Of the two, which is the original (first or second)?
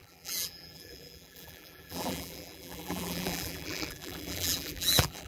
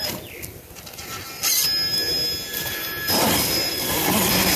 second